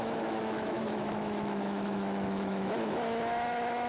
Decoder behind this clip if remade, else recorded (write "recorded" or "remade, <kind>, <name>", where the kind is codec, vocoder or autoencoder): remade, autoencoder, DAC-VAE